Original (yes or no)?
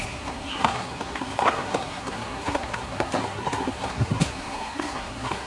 no